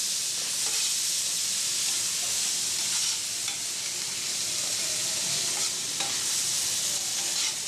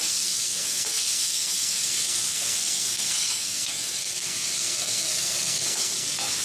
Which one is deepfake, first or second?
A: second